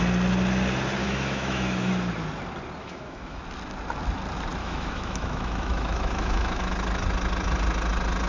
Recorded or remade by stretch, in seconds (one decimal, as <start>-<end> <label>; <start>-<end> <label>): 0.0-1.0 recorded; 1.0-1.9 remade; 1.9-2.8 recorded; 2.8-3.4 remade; 3.4-4.6 recorded; 4.6-6.7 remade; 6.7-8.3 recorded